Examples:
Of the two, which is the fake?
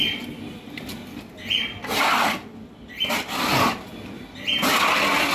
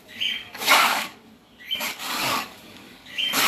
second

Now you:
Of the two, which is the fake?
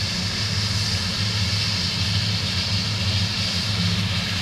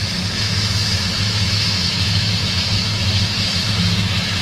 second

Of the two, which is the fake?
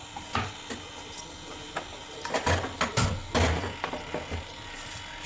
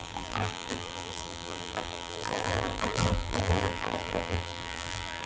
second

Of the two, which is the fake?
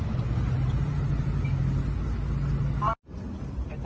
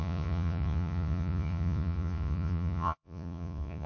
second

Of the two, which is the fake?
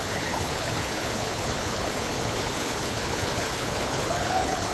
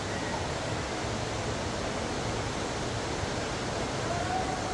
first